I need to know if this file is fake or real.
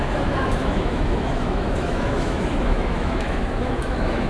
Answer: fake